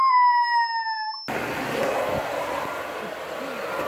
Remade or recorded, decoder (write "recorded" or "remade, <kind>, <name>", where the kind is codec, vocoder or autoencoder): recorded